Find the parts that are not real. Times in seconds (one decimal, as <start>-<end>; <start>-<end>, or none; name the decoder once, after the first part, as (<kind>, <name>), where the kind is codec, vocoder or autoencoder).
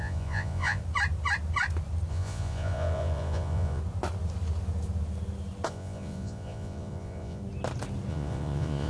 0.0-0.8 (vocoder, Vocos); 2.1-3.8; 5.7-7.4; 8.1-8.9